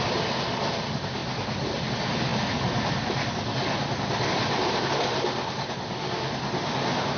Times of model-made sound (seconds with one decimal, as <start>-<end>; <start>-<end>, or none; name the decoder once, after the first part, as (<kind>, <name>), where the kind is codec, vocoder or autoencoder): none

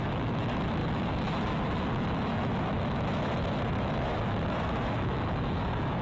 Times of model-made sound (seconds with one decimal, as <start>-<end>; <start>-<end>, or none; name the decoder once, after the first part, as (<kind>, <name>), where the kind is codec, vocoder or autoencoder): 0.0-6.0 (autoencoder, DAC-VAE)

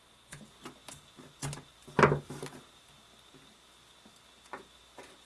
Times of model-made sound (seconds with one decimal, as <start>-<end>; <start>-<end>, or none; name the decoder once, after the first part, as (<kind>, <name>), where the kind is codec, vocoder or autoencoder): none

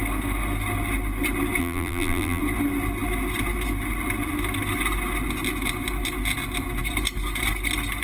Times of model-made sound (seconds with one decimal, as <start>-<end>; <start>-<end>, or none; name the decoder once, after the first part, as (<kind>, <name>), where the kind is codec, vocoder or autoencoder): 1.6-2.4 (vocoder, BigVGAN v2)

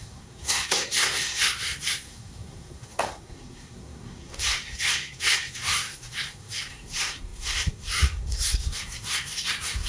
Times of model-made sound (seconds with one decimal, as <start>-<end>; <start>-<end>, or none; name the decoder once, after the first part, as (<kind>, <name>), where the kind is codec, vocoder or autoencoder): 0.0-9.9 (codec, SNAC)